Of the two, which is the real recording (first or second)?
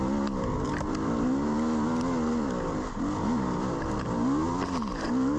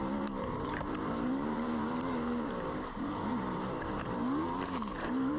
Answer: first